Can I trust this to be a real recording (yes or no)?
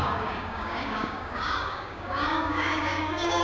no